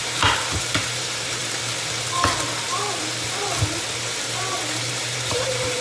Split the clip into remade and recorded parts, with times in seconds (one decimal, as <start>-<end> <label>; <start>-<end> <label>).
0.0-1.4 remade; 1.4-4.9 recorded; 4.9-5.8 remade